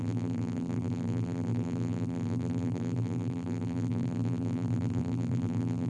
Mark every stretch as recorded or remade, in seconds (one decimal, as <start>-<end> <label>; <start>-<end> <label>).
0.0-5.9 remade